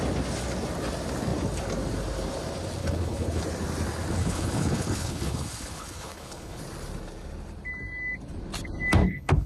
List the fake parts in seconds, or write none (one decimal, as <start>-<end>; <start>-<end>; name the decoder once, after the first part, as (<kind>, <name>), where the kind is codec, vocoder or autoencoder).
2.8-3.4 (codec, HILCodec); 4.2-6.6; 9.0-9.5